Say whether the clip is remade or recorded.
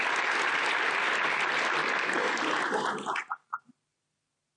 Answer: recorded